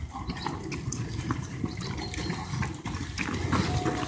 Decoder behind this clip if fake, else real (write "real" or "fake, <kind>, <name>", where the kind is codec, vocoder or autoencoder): real